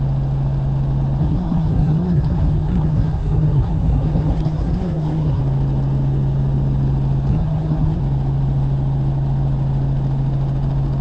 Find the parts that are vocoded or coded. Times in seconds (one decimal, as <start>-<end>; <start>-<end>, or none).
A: 1.2-5.4; 7.3-8.0